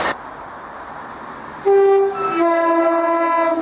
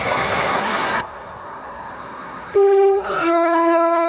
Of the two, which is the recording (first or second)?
first